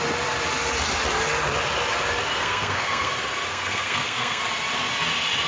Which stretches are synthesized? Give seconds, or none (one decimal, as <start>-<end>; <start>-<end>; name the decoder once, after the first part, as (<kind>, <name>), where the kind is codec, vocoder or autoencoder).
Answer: 2.3-3.1 (codec, SNAC); 3.5-4.4